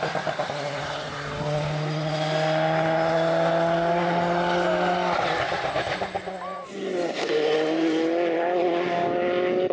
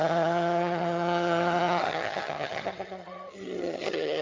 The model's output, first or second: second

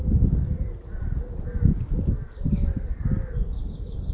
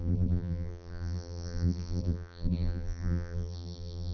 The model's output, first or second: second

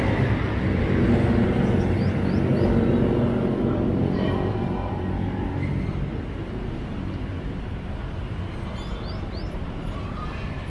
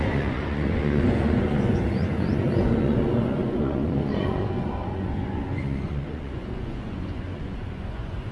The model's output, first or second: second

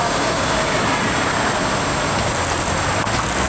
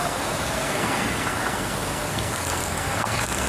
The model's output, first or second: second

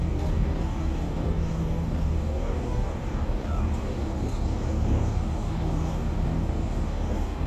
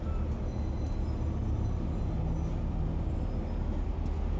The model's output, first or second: first